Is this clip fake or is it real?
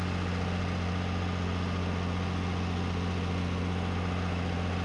real